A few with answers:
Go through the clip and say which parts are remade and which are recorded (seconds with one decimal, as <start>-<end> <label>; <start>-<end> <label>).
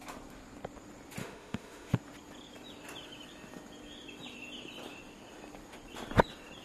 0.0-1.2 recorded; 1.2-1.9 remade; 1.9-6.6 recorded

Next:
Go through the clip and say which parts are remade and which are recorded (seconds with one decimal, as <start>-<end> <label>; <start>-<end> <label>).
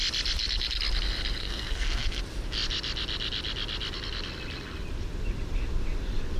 0.0-1.4 recorded; 1.4-2.2 remade; 2.2-6.4 recorded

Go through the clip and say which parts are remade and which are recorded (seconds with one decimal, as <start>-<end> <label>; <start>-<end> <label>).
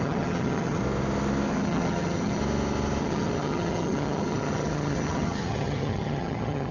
0.0-0.8 remade; 0.8-1.5 recorded; 1.5-2.4 remade; 2.4-3.0 recorded; 3.0-6.7 remade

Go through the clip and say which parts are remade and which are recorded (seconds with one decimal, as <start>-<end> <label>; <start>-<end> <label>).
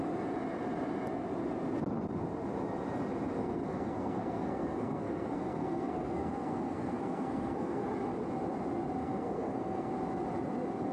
0.0-3.4 recorded; 3.4-7.9 remade; 7.9-9.0 recorded; 9.0-9.9 remade; 9.9-10.9 recorded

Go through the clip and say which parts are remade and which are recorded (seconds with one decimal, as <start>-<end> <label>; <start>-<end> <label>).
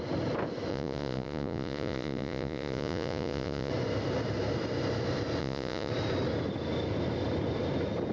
0.0-0.7 recorded; 0.7-3.7 remade; 3.7-5.4 recorded; 5.4-5.9 remade; 5.9-8.1 recorded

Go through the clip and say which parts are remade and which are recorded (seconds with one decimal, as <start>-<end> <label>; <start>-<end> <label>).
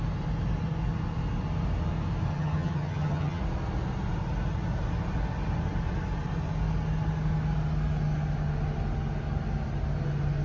0.0-2.3 recorded; 2.3-3.4 remade; 3.4-10.4 recorded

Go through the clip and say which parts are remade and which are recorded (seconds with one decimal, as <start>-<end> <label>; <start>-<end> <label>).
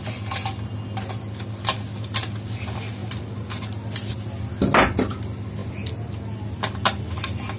0.0-7.6 recorded